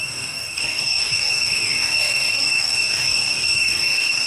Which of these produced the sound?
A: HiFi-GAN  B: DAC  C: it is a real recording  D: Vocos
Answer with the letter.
B